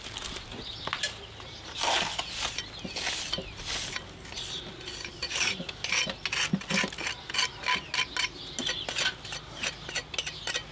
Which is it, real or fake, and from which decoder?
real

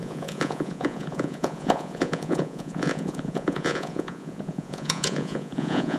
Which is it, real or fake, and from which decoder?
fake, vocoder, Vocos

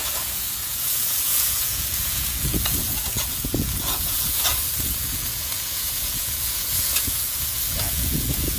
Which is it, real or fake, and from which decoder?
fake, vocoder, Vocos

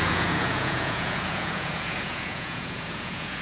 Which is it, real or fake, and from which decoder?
fake, vocoder, Vocos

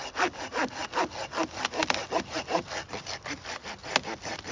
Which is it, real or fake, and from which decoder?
real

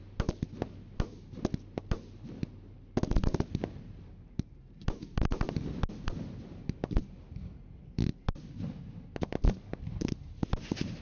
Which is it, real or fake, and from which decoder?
real